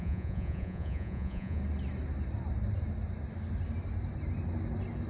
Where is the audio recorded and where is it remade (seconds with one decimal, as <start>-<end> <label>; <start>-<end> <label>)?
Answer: 0.0-1.6 remade; 1.6-5.1 recorded